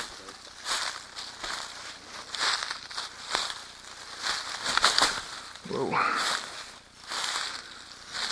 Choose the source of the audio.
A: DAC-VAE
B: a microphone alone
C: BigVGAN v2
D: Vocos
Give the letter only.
B